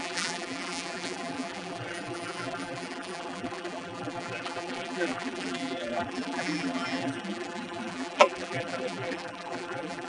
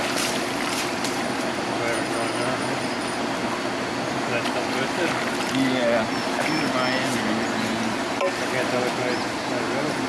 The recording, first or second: second